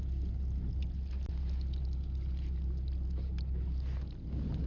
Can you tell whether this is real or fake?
real